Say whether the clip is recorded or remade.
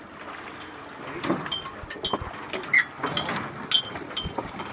recorded